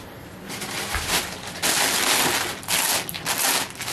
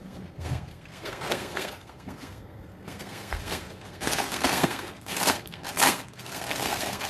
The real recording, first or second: first